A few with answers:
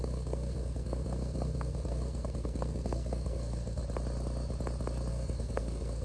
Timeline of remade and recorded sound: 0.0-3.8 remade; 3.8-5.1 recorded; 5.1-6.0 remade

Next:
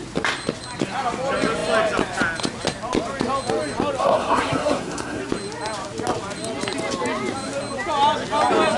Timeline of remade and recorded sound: 0.0-4.0 recorded; 4.0-5.2 remade; 5.2-8.8 recorded

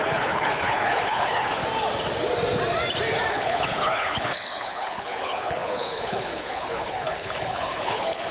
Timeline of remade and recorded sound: 0.0-1.6 remade; 1.6-3.3 recorded; 3.3-8.3 remade

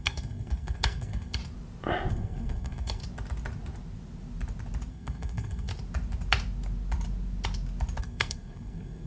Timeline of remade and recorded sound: 0.0-1.4 remade; 1.4-2.1 recorded; 2.1-3.0 remade; 3.0-4.9 recorded; 4.9-5.7 remade; 5.7-8.0 recorded; 8.0-9.1 remade

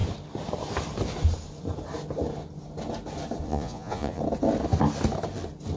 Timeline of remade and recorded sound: 0.0-3.5 recorded; 3.5-4.2 remade; 4.2-5.8 recorded

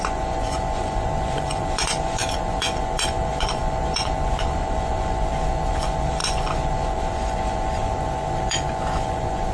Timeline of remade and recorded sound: 0.0-9.5 remade

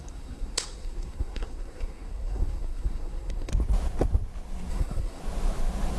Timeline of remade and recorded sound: 0.0-3.5 remade; 3.5-4.7 recorded; 4.7-5.2 remade; 5.2-6.0 recorded

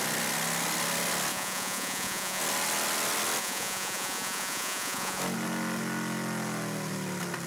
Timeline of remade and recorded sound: 0.0-1.3 recorded; 1.3-2.4 remade; 2.4-3.4 recorded; 3.4-5.2 remade; 5.2-7.5 recorded